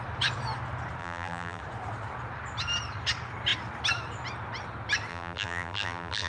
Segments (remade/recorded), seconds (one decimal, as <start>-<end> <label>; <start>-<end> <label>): 0.0-1.0 recorded; 1.0-1.6 remade; 1.6-5.1 recorded; 5.1-6.3 remade